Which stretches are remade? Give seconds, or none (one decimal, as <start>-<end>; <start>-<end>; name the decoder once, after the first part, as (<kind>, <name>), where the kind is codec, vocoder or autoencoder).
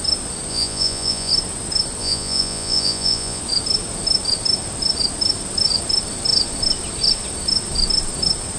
0.5-1.3 (vocoder, Vocos); 2.0-3.4